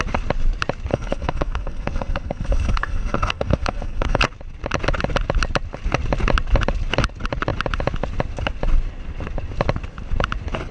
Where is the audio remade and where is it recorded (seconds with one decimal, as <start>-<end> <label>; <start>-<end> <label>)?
0.0-0.9 recorded; 0.9-4.2 remade; 4.2-10.7 recorded